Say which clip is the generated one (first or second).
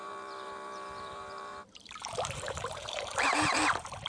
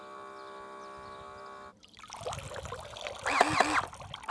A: first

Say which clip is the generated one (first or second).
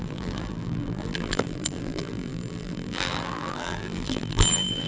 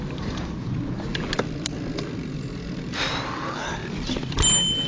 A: first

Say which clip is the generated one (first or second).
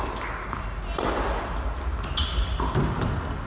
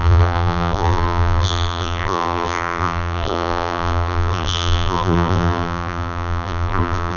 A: second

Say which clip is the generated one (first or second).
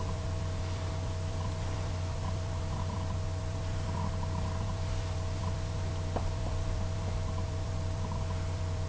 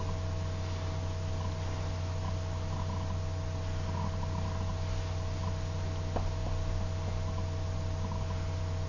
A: first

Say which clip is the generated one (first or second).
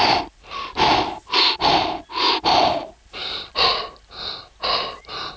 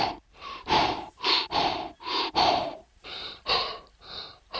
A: second